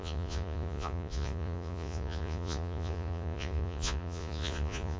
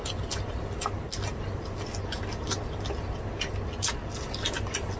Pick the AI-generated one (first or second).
first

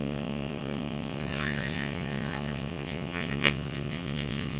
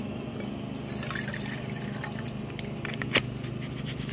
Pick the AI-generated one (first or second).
first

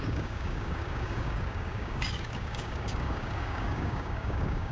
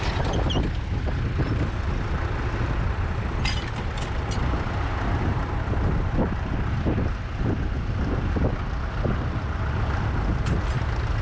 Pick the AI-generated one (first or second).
first